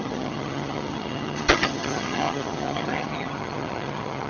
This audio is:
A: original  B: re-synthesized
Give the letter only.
B